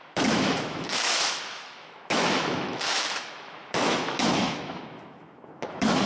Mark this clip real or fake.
fake